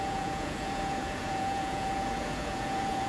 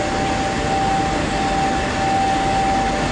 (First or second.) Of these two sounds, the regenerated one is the first